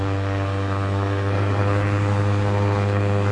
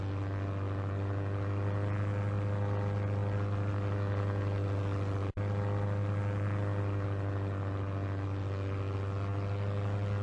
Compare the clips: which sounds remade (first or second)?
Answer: first